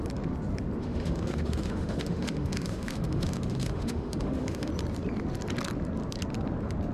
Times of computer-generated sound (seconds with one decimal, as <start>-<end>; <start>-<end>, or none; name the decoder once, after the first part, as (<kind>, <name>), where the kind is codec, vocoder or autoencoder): 0.8-4.7 (autoencoder, DAC-VAE)